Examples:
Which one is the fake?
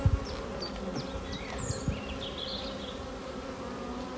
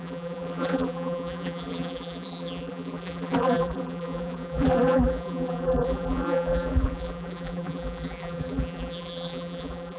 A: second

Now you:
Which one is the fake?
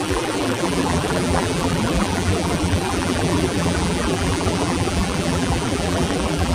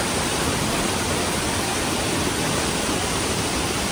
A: first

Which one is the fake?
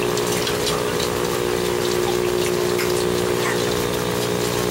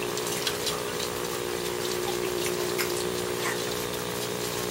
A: second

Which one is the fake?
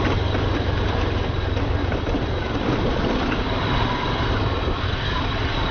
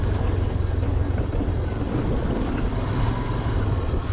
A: first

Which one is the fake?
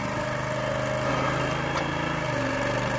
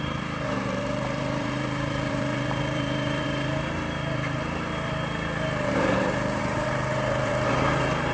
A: second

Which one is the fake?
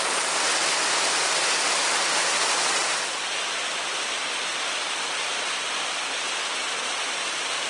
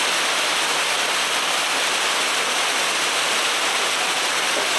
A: first